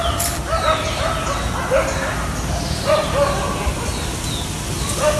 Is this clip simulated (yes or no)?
no